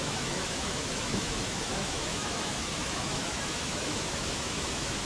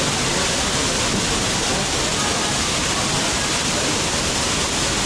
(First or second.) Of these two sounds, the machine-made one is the first